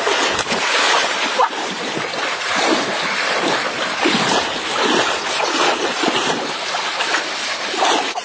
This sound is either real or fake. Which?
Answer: fake